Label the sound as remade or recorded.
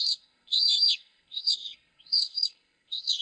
remade